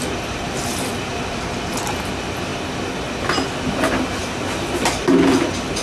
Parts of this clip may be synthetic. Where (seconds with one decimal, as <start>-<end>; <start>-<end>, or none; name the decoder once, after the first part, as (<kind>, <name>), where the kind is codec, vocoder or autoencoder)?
0.0-2.5 (vocoder, BigVGAN v2); 3.6-4.2